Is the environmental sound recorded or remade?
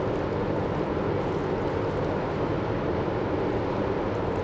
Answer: recorded